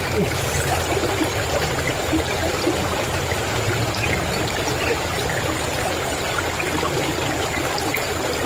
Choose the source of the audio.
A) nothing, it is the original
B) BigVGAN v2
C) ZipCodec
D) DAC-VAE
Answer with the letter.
A